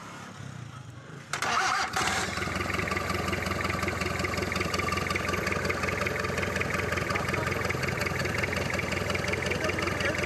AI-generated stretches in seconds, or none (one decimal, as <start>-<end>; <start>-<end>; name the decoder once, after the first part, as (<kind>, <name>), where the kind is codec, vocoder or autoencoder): 0.0-2.8 (vocoder, BigVGAN v2)